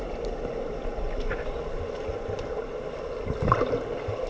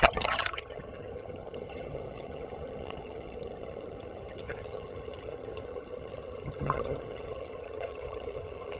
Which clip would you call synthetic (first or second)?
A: second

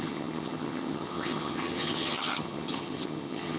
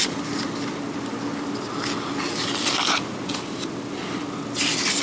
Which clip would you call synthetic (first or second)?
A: first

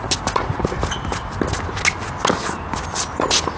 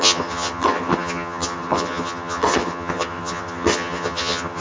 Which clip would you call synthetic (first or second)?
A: second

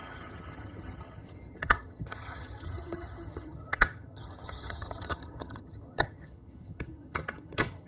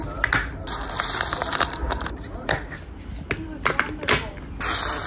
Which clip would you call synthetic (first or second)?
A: first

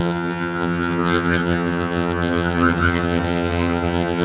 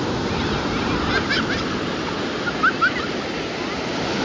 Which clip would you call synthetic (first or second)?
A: first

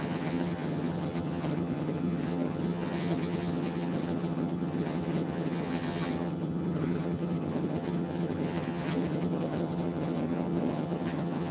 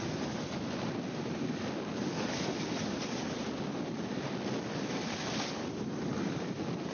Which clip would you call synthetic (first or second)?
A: first